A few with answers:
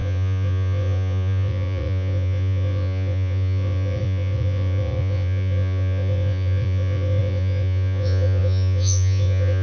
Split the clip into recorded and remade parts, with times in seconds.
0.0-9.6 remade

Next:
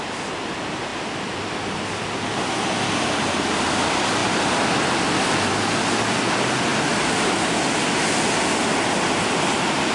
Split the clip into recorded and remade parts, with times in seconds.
0.0-9.9 recorded

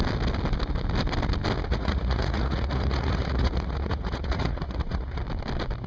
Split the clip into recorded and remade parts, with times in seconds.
0.0-1.7 recorded; 1.7-5.2 remade; 5.2-5.9 recorded

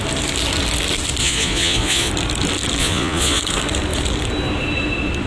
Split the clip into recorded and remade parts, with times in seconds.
0.0-1.2 recorded; 1.2-2.1 remade; 2.1-2.8 recorded; 2.8-3.4 remade; 3.4-5.3 recorded

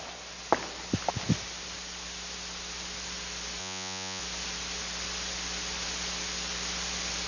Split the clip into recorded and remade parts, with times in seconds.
0.0-3.6 recorded; 3.6-4.2 remade; 4.2-7.3 recorded

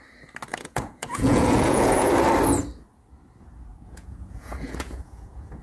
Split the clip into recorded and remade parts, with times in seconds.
0.0-0.5 recorded; 0.5-2.1 remade; 2.1-3.7 recorded; 3.7-5.6 remade

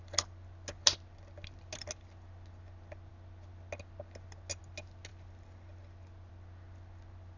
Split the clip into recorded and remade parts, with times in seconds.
0.0-7.4 recorded